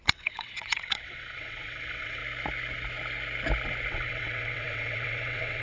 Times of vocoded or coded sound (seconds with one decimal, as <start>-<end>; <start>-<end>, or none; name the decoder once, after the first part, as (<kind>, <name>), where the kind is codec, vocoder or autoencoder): 0.0-2.2 (vocoder, WaveNeXt); 3.9-5.6